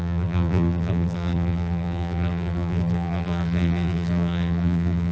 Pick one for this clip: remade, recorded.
remade